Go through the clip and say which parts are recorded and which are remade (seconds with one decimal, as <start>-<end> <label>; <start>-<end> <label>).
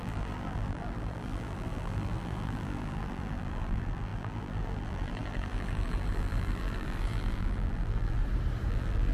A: 0.0-8.2 remade; 8.2-8.7 recorded; 8.7-9.1 remade